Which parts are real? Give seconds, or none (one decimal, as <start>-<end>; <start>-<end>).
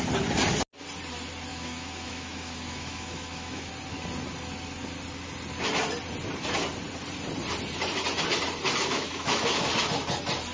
0.0-1.5; 3.7-8.8; 9.7-10.5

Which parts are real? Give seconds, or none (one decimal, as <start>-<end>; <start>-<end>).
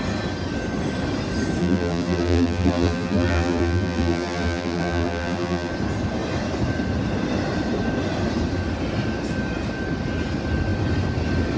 0.0-1.6; 5.7-11.6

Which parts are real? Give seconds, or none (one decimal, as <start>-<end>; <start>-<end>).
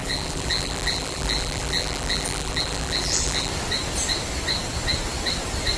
3.5-5.8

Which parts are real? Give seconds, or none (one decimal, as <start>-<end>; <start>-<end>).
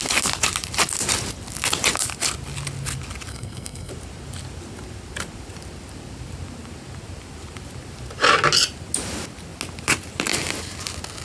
0.0-3.3; 3.9-11.2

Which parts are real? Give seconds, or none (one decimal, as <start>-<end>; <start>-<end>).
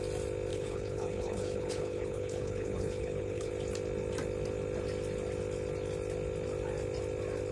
0.0-0.5; 3.5-7.5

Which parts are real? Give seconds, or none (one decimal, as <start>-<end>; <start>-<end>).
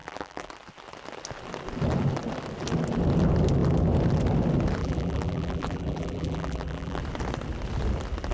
0.5-4.8; 7.0-8.3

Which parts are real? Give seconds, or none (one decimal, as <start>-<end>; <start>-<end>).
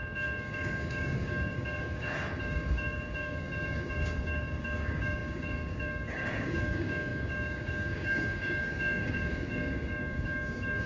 none